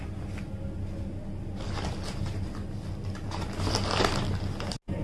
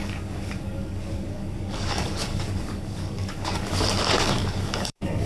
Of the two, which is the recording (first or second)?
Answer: first